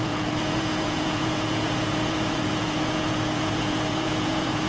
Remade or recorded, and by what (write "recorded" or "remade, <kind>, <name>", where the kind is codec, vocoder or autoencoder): remade, vocoder, Vocos